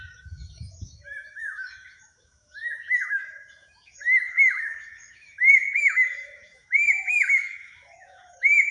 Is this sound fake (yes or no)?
yes